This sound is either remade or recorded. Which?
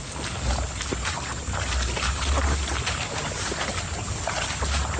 recorded